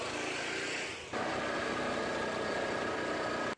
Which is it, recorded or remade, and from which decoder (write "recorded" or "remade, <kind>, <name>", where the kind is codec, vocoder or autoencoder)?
recorded